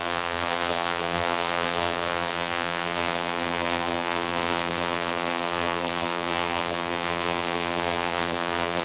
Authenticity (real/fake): fake